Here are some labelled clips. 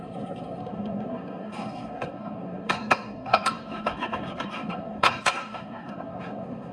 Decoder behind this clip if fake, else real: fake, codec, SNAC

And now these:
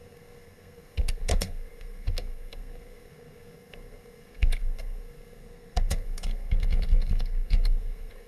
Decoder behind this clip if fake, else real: fake, codec, SNAC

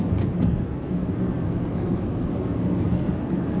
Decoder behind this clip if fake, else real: fake, codec, SNAC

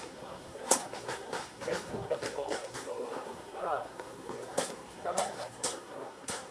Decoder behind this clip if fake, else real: fake, codec, SNAC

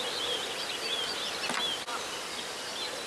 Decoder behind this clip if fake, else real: real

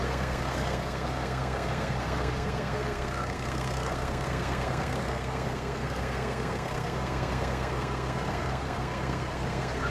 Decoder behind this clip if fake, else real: fake, codec, SNAC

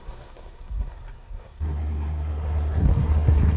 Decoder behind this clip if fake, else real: fake, codec, SNAC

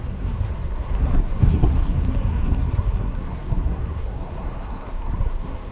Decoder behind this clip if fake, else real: fake, codec, SNAC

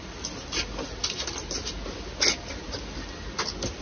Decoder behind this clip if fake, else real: real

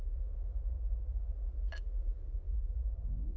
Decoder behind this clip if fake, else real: real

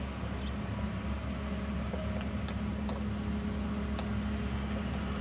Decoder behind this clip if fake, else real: real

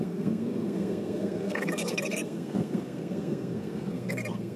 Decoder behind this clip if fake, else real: fake, codec, SNAC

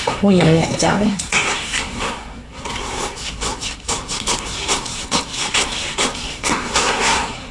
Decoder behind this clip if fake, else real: fake, codec, SNAC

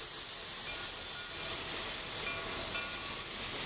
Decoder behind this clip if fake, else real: real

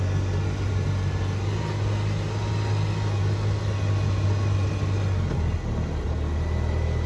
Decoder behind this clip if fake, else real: real